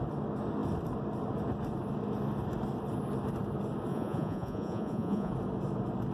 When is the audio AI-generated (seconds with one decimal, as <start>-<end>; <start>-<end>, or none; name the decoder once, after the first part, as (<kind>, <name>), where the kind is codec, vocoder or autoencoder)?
3.9-5.3 (vocoder, Vocos)

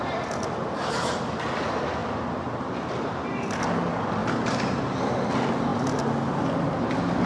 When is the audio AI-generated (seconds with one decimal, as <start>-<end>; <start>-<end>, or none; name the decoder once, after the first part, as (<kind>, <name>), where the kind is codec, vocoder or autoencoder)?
4.2-4.8 (vocoder, BigVGAN v2)